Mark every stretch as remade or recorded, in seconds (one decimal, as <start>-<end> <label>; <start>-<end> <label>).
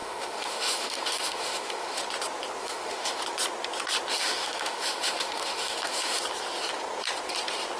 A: 0.0-2.0 remade; 2.0-2.6 recorded; 2.6-3.2 remade; 3.2-4.1 recorded; 4.1-6.2 remade; 6.2-7.8 recorded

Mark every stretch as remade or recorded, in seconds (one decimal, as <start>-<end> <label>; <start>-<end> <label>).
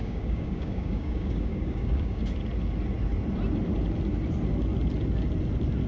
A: 0.0-2.2 remade; 2.2-5.9 recorded